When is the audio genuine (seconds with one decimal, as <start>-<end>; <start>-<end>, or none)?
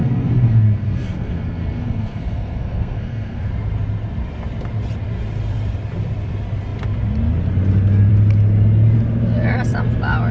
3.5-10.3